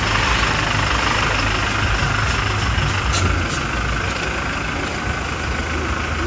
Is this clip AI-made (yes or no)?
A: no